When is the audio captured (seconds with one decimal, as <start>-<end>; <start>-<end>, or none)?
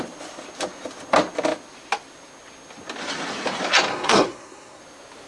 0.0-3.9; 4.8-5.3